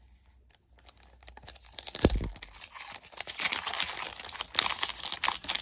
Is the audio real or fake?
real